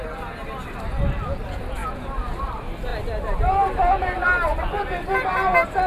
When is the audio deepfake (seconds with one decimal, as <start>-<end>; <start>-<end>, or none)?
none